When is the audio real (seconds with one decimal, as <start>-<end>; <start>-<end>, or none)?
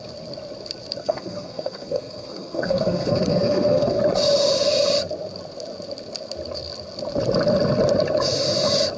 0.0-1.0; 4.0-9.0